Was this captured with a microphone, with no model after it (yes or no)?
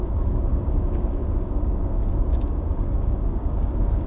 no